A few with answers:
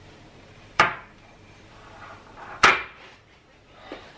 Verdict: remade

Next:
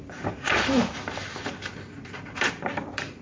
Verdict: remade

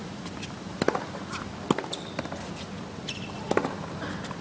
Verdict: recorded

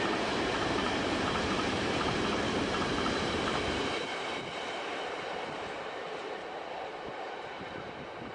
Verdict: remade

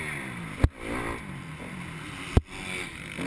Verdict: recorded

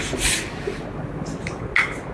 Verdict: recorded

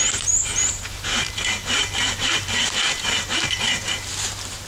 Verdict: remade